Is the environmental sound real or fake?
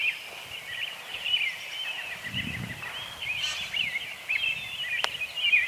real